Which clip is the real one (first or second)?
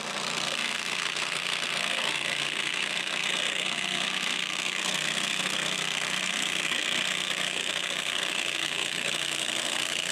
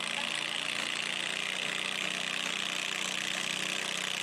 second